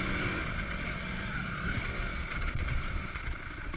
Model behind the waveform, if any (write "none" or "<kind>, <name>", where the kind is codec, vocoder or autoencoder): vocoder, Vocos